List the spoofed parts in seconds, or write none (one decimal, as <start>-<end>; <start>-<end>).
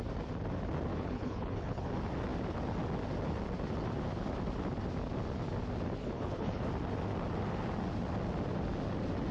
0.9-1.9; 6.0-6.7